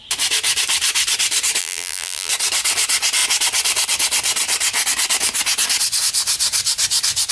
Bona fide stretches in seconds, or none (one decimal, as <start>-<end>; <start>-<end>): 0.0-1.6; 2.3-7.3

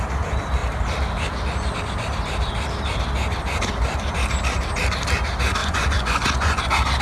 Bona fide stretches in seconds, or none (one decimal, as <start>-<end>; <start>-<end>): 0.0-5.6; 6.6-7.0

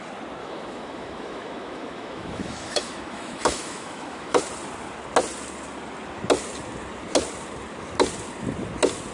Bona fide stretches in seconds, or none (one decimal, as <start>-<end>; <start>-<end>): 0.0-0.4; 4.4-9.1